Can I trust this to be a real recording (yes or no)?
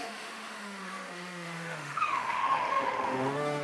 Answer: no